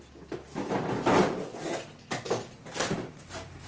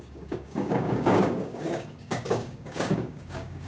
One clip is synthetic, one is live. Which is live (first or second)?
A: first